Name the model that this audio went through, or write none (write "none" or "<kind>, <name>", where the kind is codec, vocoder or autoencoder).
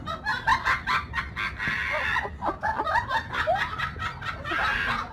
none